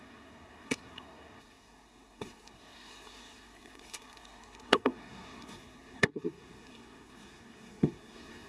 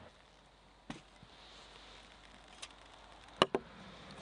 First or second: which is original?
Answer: second